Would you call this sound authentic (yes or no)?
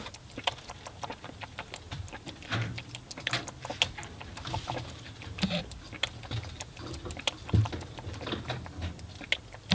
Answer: yes